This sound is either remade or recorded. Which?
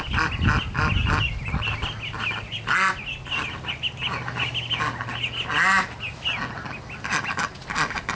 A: recorded